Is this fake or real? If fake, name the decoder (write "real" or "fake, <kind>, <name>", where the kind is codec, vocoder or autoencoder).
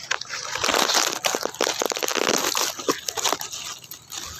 real